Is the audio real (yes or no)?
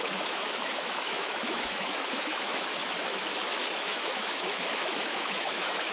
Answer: no